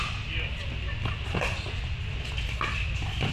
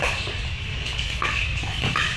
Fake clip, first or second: second